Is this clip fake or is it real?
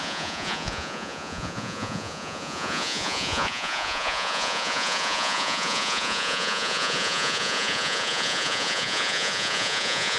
fake